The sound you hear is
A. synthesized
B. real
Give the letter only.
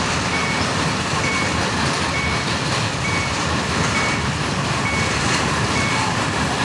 A